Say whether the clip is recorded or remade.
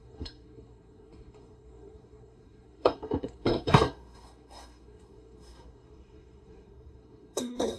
remade